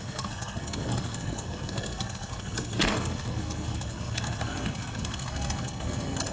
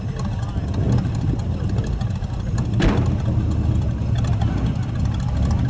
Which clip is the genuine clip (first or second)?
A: second